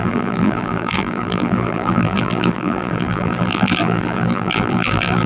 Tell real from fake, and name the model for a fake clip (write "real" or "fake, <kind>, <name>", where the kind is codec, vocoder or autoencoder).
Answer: fake, vocoder, BigVGAN v2